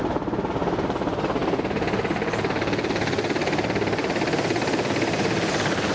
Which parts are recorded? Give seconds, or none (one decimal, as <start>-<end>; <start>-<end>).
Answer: 0.0-5.9